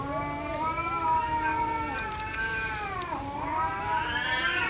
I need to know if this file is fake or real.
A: real